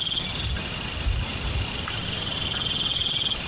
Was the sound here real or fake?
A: real